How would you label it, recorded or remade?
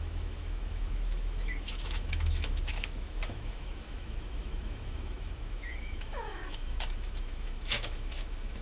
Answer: remade